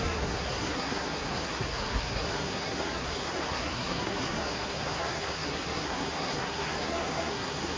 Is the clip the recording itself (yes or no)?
no